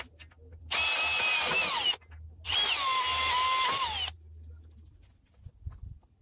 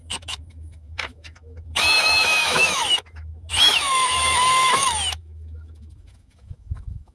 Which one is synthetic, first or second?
second